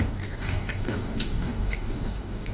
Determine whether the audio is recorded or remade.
remade